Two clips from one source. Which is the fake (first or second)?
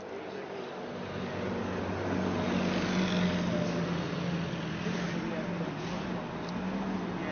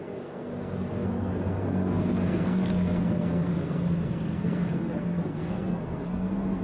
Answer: second